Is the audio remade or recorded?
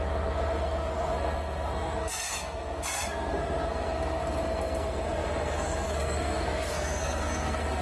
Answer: remade